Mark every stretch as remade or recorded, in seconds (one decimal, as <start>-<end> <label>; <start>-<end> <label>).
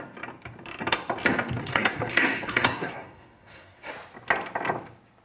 0.0-1.6 recorded; 1.6-3.9 remade; 3.9-5.2 recorded